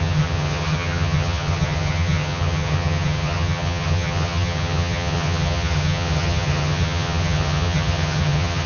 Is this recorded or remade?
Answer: remade